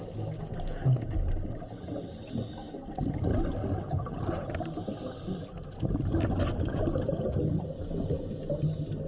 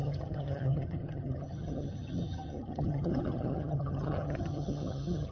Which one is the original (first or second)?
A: first